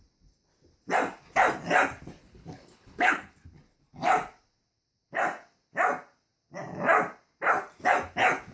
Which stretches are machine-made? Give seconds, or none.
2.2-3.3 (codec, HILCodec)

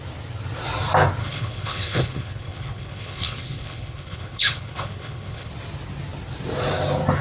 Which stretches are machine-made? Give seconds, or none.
1.2-5.5 (codec, HILCodec)

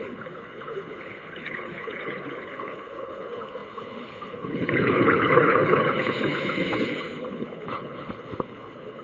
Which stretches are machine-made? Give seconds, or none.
0.0-9.0 (codec, HILCodec)

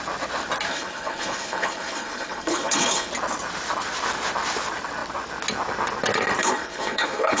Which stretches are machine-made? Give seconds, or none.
0.7-3.1 (codec, HILCodec); 6.4-7.4

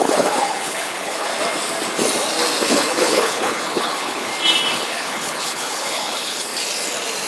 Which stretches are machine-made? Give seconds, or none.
0.0-1.3 (codec, HILCodec); 2.6-4.3; 4.8-6.5

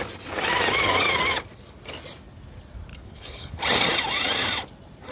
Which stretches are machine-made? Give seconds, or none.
2.9-3.5 (codec, HILCodec)

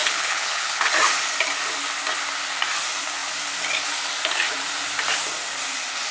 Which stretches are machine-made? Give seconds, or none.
0.0-0.9 (codec, HILCodec)

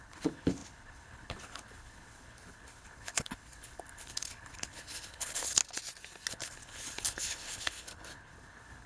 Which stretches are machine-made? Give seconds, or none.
0.0-5.6 (codec, HILCodec); 6.3-8.9